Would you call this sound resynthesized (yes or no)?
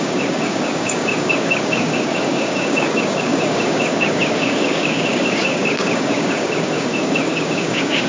yes